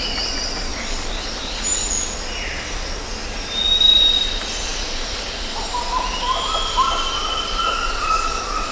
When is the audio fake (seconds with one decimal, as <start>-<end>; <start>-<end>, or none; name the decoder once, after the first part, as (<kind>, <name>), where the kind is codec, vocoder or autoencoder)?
0.7-1.9 (vocoder, BigVGAN v2)